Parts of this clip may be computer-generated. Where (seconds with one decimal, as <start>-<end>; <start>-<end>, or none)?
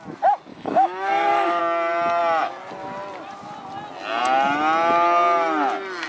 0.5-1.6